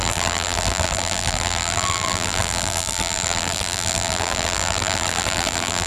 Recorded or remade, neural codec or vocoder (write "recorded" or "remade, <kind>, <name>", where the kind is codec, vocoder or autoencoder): remade, vocoder, BigVGAN v2